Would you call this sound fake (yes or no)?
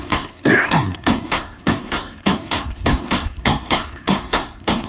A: yes